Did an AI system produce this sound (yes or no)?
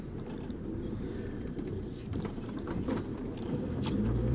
yes